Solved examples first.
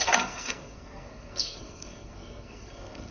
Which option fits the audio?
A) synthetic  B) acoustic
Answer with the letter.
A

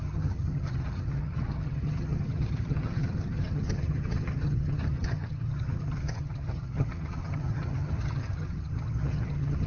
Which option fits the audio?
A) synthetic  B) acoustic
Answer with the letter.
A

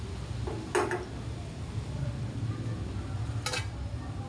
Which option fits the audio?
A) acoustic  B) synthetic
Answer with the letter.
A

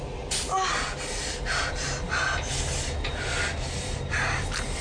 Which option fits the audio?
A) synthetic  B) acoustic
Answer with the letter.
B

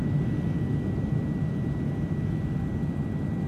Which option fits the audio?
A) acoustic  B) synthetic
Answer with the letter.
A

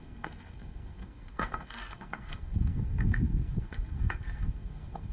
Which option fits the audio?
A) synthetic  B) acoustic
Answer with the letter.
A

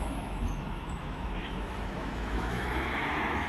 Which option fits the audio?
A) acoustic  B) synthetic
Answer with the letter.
B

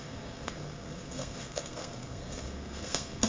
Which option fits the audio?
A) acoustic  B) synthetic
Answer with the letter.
B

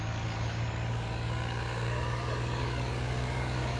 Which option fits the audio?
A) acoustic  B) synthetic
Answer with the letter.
B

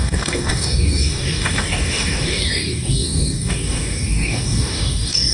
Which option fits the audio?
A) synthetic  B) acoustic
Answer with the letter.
A